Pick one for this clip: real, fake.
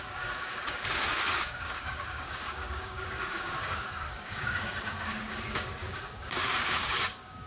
fake